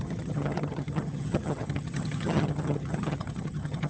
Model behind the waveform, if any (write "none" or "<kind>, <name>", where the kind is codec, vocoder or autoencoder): vocoder, HiFi-GAN